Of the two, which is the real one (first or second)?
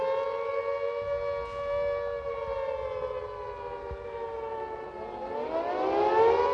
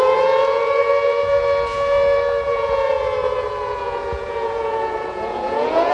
first